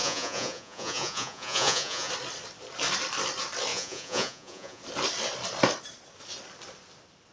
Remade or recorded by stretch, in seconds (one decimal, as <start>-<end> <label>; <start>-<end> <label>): 0.0-2.1 remade; 2.1-3.7 recorded; 3.7-4.8 remade; 4.8-7.3 recorded

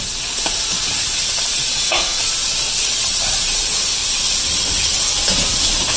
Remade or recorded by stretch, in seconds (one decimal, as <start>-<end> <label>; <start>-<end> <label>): 0.0-1.7 recorded; 1.7-2.2 remade; 2.2-6.0 recorded

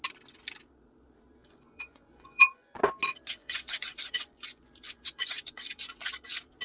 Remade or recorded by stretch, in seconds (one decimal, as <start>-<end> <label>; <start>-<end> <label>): 0.0-1.4 recorded; 1.4-2.8 remade; 2.8-3.4 recorded; 3.4-6.1 remade; 6.1-6.6 recorded

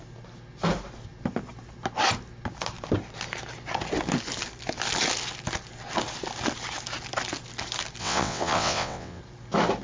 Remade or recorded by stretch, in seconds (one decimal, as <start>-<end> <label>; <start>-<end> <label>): 0.0-8.0 recorded; 8.0-9.2 remade; 9.2-9.8 recorded